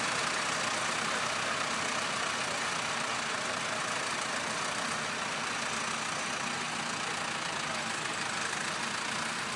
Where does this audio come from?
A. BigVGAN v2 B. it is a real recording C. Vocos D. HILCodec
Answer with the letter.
B